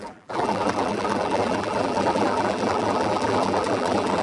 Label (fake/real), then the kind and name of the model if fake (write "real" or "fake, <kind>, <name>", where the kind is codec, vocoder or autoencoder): fake, vocoder, BigVGAN v2